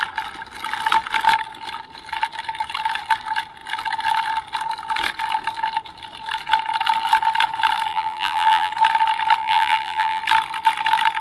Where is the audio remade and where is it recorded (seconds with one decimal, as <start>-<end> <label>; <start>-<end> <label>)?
0.0-7.9 recorded; 7.9-8.7 remade; 8.7-9.4 recorded; 9.4-10.2 remade; 10.2-11.2 recorded